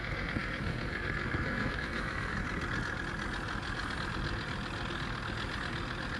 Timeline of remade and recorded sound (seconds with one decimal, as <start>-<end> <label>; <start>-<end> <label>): 0.0-2.4 remade; 2.4-6.2 recorded